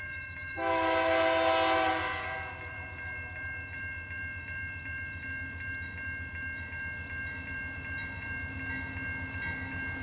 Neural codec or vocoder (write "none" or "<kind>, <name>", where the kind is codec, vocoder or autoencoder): none